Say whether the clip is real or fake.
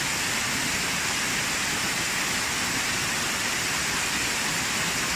real